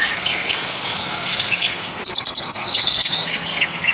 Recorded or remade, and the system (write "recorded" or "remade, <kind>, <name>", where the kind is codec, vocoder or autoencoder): remade, codec, SNAC